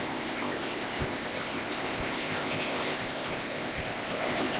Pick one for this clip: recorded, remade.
remade